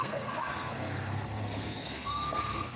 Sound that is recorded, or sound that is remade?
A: remade